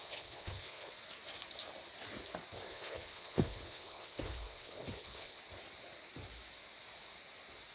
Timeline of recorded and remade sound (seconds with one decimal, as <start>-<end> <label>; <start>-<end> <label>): 0.0-0.9 remade; 0.9-2.7 recorded; 2.7-5.4 remade; 5.4-7.7 recorded